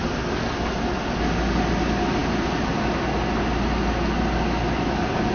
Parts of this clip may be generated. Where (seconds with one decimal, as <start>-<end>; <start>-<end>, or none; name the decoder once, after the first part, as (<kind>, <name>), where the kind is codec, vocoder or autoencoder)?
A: none